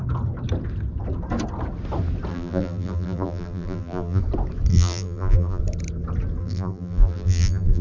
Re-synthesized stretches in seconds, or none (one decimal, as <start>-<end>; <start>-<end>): 2.3-4.2; 4.7-5.6; 6.4-7.8